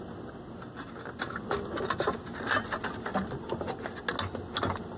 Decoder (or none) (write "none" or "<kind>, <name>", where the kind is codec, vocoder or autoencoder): none